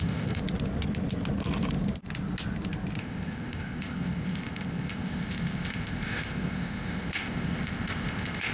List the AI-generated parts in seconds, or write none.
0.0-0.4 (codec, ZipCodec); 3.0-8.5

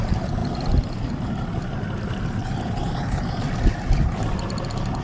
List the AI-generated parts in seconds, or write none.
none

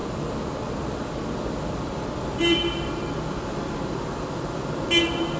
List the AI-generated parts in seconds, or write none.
none

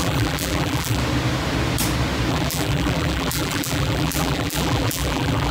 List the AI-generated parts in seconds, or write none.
0.0-1.0 (vocoder, BigVGAN v2); 2.3-5.5

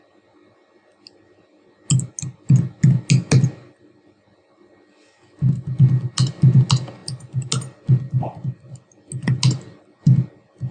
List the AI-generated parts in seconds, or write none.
none

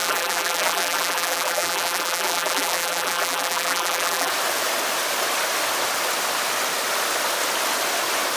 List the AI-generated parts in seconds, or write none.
0.0-4.3 (vocoder, BigVGAN v2)

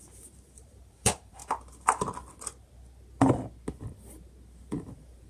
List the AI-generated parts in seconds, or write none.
0.0-1.4 (vocoder, BigVGAN v2); 4.6-5.3